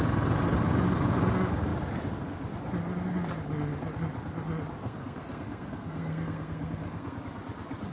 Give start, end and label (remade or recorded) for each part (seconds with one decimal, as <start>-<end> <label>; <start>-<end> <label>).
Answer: 0.0-4.8 recorded; 4.8-7.2 remade; 7.2-7.9 recorded